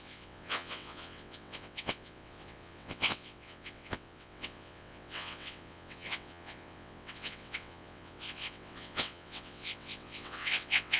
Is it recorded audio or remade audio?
remade